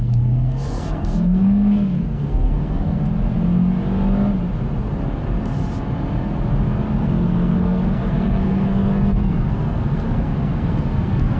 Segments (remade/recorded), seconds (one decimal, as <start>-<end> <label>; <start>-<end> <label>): 0.0-3.0 remade; 3.0-7.0 recorded; 7.0-11.4 remade